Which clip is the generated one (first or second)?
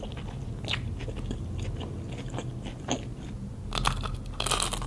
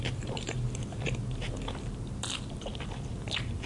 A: second